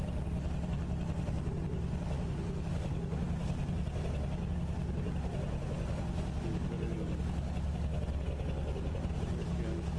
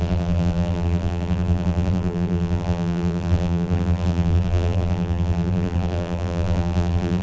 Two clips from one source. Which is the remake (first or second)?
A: second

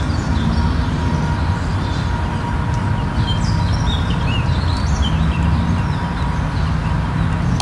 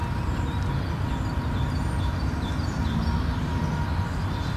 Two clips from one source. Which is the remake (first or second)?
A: first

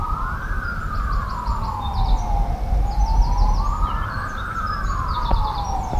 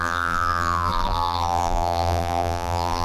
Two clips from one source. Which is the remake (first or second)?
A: second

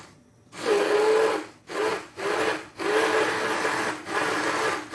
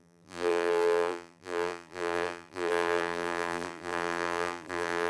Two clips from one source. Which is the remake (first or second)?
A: second